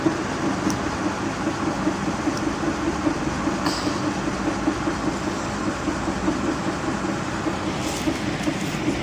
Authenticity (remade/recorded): recorded